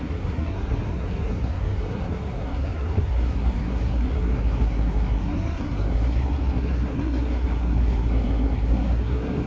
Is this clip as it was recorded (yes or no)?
no